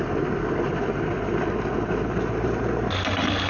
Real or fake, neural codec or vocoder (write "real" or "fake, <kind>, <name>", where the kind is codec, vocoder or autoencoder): real